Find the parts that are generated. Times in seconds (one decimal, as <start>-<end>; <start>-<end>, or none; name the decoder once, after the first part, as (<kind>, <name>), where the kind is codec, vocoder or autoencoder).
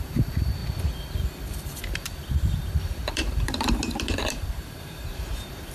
0.0-0.6 (vocoder, BigVGAN v2); 1.8-5.7